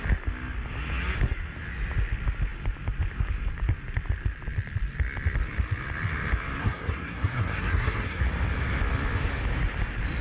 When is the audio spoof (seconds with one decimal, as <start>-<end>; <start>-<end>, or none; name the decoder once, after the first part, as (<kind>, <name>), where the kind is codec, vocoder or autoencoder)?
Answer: 6.6-8.2 (codec, SNAC)